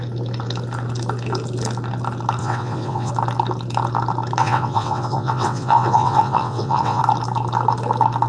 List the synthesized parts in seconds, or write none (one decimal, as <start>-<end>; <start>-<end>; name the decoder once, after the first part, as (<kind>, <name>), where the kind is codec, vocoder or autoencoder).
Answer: 2.4-3.1 (vocoder, WaveNeXt); 4.4-7.0